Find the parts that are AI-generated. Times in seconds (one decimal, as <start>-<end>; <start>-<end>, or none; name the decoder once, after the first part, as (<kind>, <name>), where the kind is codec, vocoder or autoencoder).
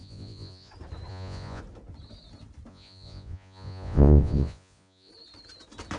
0.0-0.7 (vocoder, Vocos); 1.1-1.6; 2.7-5.1